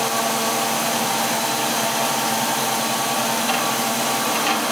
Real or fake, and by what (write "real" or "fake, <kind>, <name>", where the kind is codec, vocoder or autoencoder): fake, vocoder, BigVGAN v2